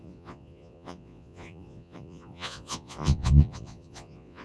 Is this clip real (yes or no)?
no